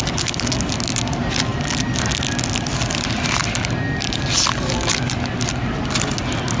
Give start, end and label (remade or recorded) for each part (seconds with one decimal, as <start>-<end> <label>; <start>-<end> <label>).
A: 0.0-6.6 recorded